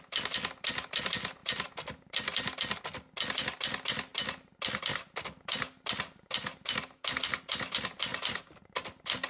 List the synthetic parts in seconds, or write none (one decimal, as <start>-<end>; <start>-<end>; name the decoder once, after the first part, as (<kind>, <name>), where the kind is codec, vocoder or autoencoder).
none